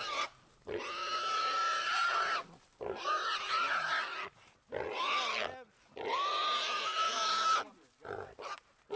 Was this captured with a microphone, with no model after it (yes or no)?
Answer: yes